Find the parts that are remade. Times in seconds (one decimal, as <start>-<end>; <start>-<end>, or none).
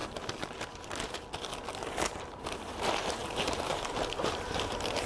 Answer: 2.1-5.1